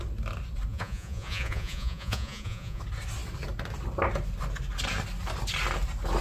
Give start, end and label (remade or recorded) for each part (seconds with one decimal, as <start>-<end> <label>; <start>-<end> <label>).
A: 0.0-0.7 recorded; 0.7-2.8 remade; 2.8-6.2 recorded

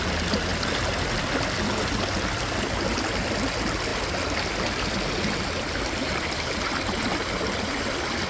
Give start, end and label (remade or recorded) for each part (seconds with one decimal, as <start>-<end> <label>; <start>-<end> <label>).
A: 0.0-8.3 recorded

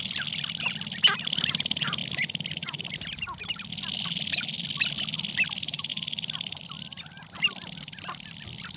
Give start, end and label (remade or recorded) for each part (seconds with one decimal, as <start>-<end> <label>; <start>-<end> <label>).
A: 0.0-8.8 recorded

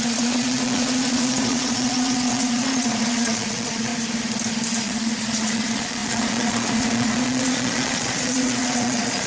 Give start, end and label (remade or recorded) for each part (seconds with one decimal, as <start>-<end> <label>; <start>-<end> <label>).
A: 0.0-3.9 remade; 3.9-4.8 recorded; 4.8-9.3 remade

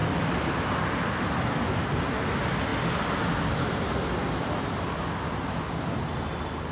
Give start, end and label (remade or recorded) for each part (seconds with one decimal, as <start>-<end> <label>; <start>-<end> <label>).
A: 0.0-6.7 recorded

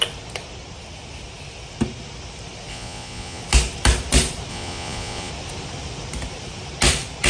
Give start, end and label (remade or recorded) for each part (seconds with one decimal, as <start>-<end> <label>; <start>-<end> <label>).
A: 0.0-2.7 recorded; 2.7-3.4 remade; 3.4-4.5 recorded; 4.5-5.3 remade; 5.3-7.3 recorded